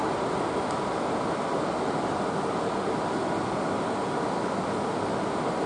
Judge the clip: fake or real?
real